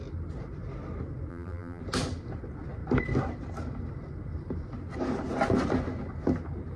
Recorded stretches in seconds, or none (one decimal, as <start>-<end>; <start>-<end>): 0.0-1.3; 1.8-6.8